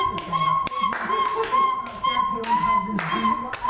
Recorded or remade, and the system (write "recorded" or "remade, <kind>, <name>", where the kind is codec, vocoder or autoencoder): recorded